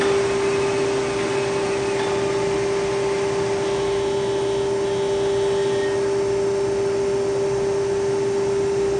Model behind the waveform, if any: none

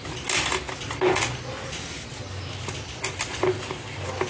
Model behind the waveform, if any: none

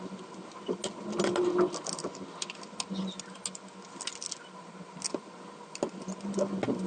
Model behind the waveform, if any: none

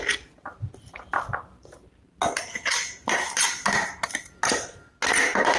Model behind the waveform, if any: none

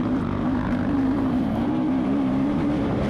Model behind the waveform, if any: vocoder, BigVGAN v2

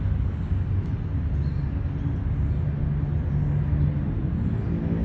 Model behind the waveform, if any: none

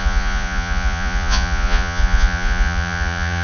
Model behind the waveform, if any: vocoder, Vocos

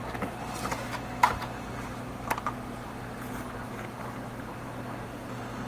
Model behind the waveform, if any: none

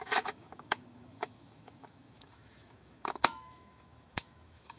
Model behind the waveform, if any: autoencoder, DAC-VAE